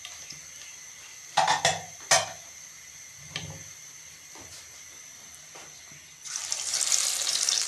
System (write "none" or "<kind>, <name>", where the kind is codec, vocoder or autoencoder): none